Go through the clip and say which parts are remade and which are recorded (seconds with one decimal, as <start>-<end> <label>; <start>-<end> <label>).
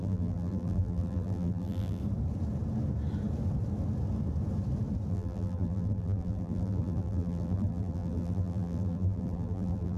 0.0-2.0 remade; 2.0-5.1 recorded; 5.1-10.0 remade